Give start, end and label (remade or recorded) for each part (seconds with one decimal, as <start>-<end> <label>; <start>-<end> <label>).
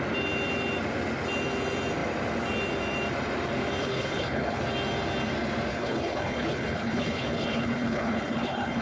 0.0-3.8 recorded; 3.8-4.6 remade; 4.6-5.7 recorded; 5.7-8.8 remade